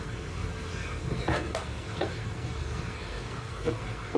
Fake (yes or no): yes